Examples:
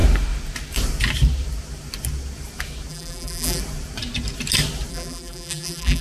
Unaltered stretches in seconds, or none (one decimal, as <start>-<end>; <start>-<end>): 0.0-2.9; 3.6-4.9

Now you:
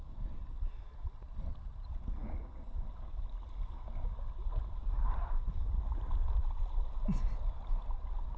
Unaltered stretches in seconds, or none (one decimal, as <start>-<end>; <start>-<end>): 0.0-5.0; 7.2-8.4

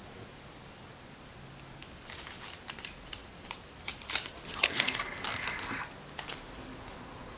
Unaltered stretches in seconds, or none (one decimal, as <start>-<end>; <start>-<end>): 0.0-3.2; 4.1-7.4